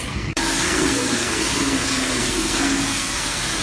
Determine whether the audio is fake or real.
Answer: fake